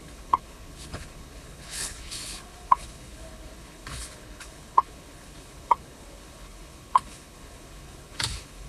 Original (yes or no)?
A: no